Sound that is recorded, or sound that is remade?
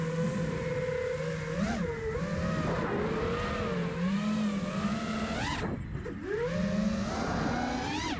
recorded